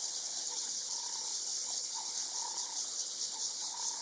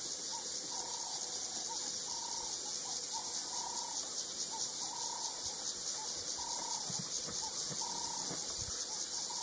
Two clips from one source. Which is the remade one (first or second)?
first